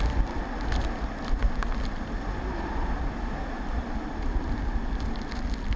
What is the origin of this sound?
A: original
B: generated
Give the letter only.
A